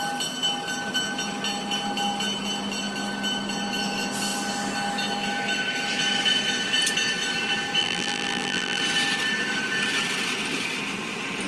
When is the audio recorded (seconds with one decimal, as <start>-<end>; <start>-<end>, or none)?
0.0-7.8; 8.8-11.5